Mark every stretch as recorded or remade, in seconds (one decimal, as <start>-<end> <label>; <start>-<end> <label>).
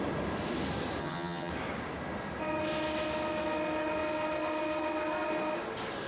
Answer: 0.0-1.0 recorded; 1.0-1.5 remade; 1.5-6.1 recorded